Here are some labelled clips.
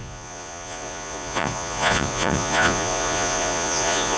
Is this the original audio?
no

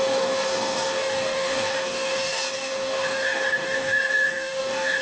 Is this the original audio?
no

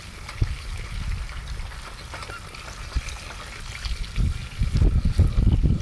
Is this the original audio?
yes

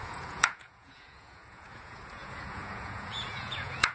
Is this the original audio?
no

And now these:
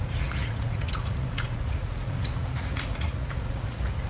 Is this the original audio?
no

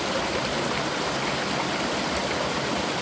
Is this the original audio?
yes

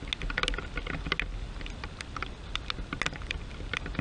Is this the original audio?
yes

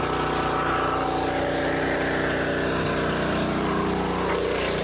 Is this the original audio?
yes